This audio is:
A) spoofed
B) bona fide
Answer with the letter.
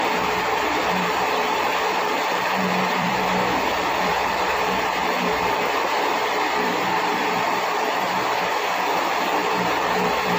A